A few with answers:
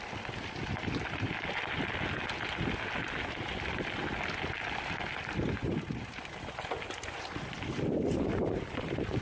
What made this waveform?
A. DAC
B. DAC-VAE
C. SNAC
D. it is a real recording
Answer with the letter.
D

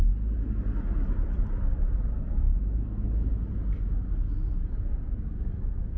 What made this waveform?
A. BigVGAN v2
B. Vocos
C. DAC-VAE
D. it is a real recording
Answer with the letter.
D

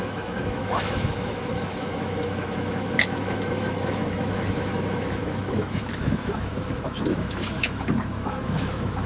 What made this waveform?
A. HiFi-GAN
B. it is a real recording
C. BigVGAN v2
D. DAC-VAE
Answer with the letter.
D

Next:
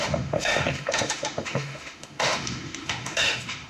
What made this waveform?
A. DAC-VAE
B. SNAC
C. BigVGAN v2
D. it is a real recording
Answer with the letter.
A